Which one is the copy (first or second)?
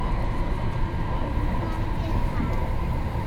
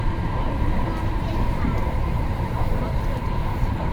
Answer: second